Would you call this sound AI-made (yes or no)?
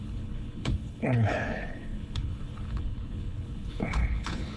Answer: yes